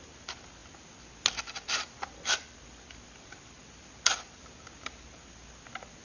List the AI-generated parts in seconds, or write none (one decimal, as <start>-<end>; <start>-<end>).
none